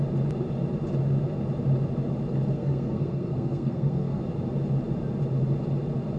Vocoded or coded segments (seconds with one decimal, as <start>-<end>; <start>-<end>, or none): 2.5-4.2

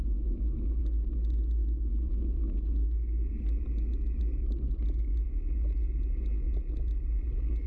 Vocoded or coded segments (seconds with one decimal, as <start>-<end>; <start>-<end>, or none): none

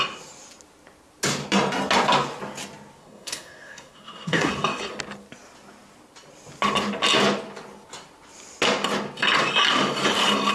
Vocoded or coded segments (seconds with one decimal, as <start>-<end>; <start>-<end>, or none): 3.0-4.5

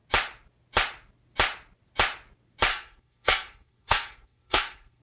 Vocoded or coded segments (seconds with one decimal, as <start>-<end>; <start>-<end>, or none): 2.7-5.0

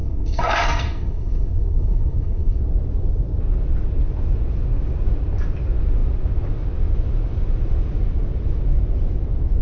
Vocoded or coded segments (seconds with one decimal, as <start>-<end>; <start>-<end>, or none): 0.0-2.6

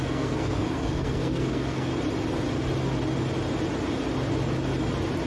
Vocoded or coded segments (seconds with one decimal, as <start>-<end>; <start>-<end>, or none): 0.0-1.9

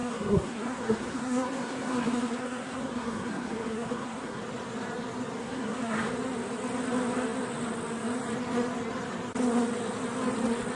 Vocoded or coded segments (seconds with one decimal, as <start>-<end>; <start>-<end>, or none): 0.0-4.4; 5.4-6.1